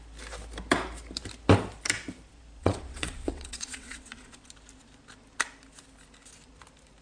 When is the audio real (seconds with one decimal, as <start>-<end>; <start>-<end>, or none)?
0.0-2.6; 4.5-7.0